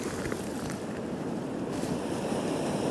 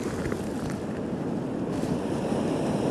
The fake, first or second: first